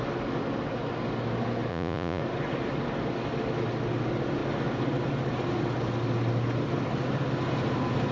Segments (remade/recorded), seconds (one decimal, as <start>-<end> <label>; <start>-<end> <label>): 0.0-1.7 recorded; 1.7-2.2 remade; 2.2-8.1 recorded